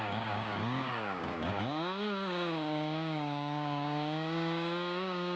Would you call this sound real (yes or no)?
no